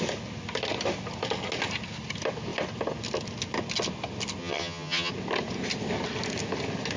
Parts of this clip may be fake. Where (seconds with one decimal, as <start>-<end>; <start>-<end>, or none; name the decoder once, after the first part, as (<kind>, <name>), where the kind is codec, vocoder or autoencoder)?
4.4-5.1 (vocoder, HiFi-GAN)